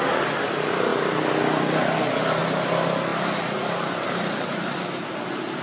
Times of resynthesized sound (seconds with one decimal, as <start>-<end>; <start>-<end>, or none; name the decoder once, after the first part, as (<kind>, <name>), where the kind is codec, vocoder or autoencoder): none